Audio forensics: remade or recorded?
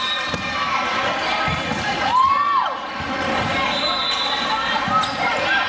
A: recorded